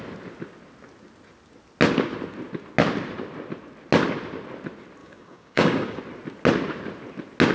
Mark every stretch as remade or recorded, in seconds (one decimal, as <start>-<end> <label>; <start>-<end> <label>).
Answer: 0.0-5.0 recorded; 5.0-6.0 remade; 6.0-7.5 recorded